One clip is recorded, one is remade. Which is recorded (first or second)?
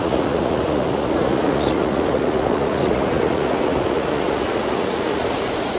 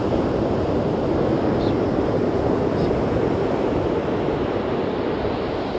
second